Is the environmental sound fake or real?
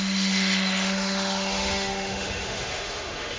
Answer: fake